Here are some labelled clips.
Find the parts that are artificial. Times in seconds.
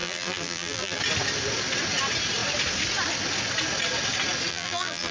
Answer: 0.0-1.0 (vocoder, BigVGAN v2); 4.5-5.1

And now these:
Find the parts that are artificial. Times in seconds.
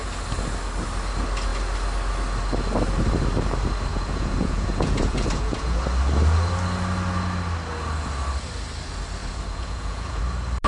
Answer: 3.9-5.8 (vocoder, Vocos); 9.2-10.2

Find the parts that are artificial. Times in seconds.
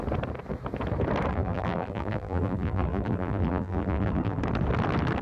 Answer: 1.3-4.4 (vocoder, BigVGAN v2)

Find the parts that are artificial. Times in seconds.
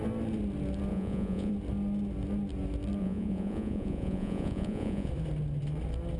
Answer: 0.9-1.5 (vocoder, Vocos); 3.0-5.1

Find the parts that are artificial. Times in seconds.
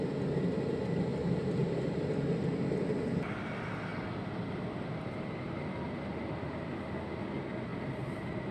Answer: none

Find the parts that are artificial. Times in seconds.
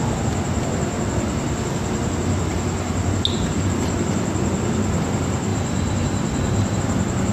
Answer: 5.5-6.8 (vocoder, BigVGAN v2)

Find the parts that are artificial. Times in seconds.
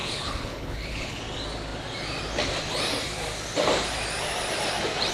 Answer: 0.0-1.2 (codec, HILCodec)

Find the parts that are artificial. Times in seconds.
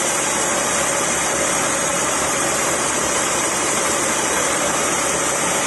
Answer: 1.9-4.9 (vocoder, BigVGAN v2)